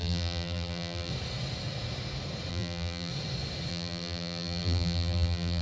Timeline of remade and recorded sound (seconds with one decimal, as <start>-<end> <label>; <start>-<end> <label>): 0.0-1.1 remade; 1.1-2.5 recorded; 2.5-3.1 remade; 3.1-3.7 recorded; 3.7-5.6 remade

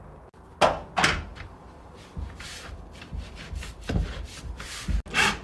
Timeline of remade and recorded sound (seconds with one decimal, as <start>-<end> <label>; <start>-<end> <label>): 0.0-1.3 recorded; 1.3-4.4 remade; 4.4-5.4 recorded

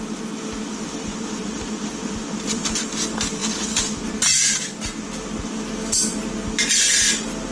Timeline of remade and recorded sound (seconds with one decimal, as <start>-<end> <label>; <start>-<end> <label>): 0.0-0.7 recorded; 0.7-2.8 remade; 2.8-3.4 recorded; 3.4-4.1 remade; 4.1-7.5 recorded

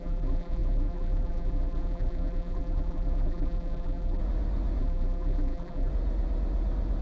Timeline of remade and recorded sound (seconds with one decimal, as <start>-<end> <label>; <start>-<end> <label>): 0.0-4.2 remade; 4.2-4.8 recorded; 4.8-5.9 remade; 5.9-7.0 recorded

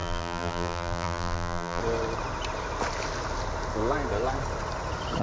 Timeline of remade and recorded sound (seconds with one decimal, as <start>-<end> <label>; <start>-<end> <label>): 0.0-1.8 remade; 1.8-5.2 recorded

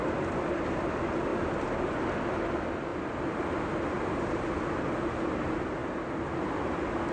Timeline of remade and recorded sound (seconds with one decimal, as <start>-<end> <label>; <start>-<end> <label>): 0.0-1.3 recorded; 1.3-2.4 remade; 2.4-7.1 recorded

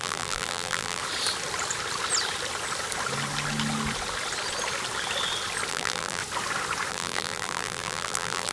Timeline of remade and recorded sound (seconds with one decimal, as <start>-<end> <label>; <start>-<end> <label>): 0.0-1.0 remade; 1.0-5.7 recorded; 5.7-6.2 remade; 6.2-6.9 recorded; 6.9-8.5 remade

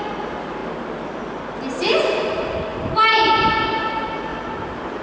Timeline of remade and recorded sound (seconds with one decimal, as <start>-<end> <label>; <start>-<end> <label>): 0.0-4.3 recorded; 4.3-5.0 remade